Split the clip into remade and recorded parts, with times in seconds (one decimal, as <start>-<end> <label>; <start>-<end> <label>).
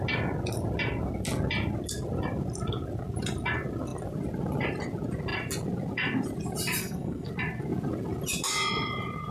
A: 0.0-6.8 recorded; 6.8-7.3 remade; 7.3-9.3 recorded